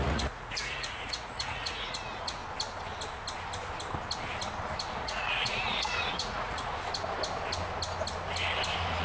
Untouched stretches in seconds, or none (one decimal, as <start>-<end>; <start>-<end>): 2.4-5.0; 6.7-9.0